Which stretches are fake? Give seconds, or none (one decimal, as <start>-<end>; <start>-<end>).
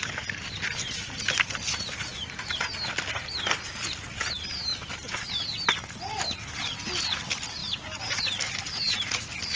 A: 2.1-2.7; 4.7-5.3